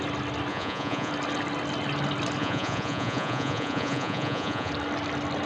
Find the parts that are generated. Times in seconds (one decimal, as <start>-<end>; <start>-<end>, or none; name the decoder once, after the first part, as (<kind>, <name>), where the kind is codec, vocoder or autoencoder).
0.5-1.1 (vocoder, Vocos); 2.4-4.7